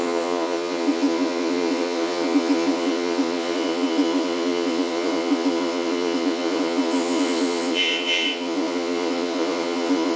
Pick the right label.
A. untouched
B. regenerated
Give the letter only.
B